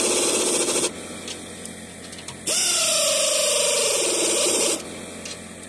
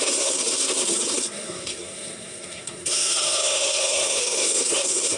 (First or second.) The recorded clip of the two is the first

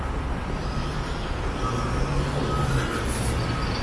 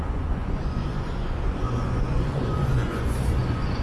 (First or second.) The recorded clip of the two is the first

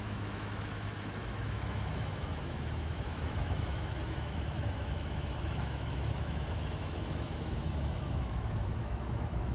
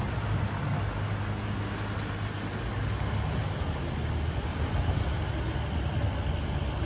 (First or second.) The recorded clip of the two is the second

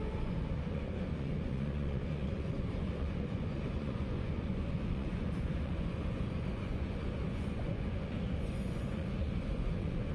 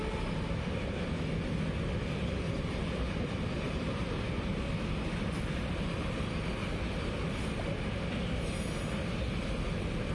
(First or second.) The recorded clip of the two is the second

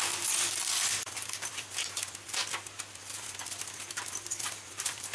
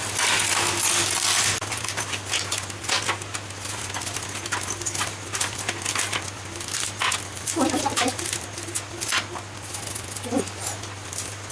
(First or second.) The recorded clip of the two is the second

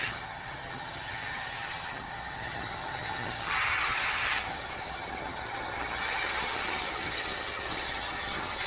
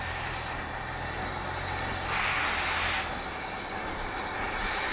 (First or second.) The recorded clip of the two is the second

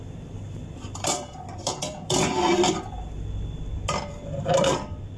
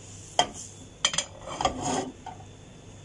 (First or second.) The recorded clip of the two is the second